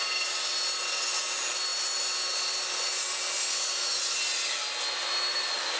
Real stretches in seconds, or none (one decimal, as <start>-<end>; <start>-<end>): 0.0-5.8

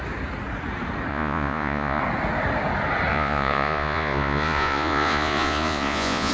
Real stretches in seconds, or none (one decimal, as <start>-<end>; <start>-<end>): 0.0-1.1; 2.0-3.1

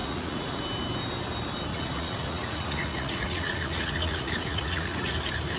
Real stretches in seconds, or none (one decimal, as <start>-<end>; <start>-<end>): 0.6-1.7; 5.1-5.6

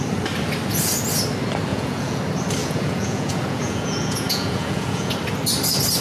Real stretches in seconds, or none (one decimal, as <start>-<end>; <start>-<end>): 0.0-1.7; 2.2-2.6; 5.1-6.0

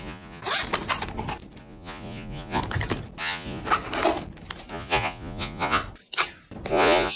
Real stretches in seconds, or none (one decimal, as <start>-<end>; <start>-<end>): 0.4-1.6; 2.6-3.2; 3.6-4.7; 5.8-6.7

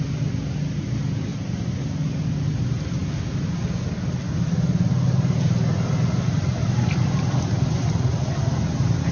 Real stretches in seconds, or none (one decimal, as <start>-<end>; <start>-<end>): 0.0-9.1

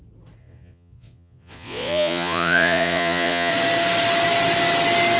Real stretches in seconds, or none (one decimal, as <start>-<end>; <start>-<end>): 0.0-0.4; 3.5-5.2

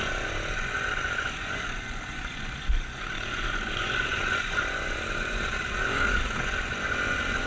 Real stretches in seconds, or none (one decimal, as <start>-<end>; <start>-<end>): none